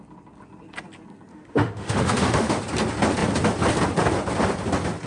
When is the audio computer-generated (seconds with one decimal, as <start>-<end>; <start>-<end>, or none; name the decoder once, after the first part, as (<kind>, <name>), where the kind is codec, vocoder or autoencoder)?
1.3-2.6 (autoencoder, DAC-VAE)